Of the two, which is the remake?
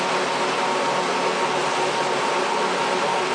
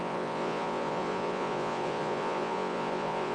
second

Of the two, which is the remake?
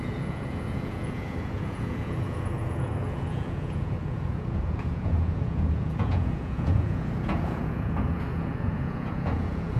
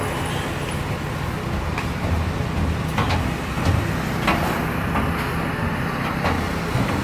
first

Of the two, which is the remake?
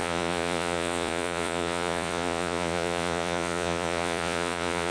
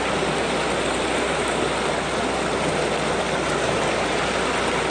first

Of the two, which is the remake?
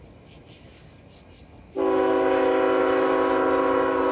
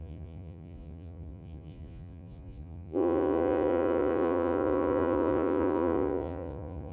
second